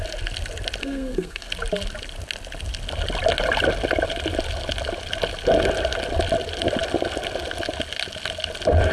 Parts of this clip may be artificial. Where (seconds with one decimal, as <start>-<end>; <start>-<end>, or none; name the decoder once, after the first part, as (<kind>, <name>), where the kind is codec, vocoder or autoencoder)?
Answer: 0.8-1.5 (codec, SNAC)